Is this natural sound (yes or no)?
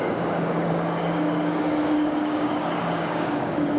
no